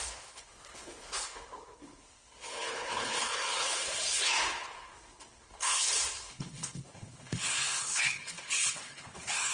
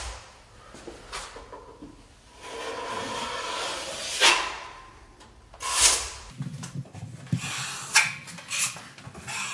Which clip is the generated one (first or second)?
first